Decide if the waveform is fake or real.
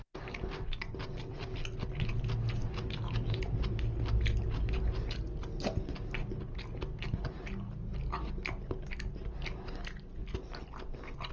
real